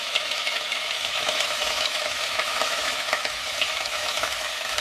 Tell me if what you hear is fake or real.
fake